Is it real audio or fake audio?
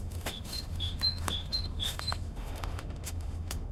fake